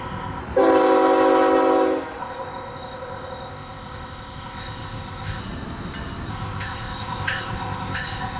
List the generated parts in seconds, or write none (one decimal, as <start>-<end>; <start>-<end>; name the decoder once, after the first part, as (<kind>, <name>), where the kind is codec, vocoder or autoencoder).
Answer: 0.0-0.4 (codec, ZipCodec); 2.2-5.4; 6.3-8.4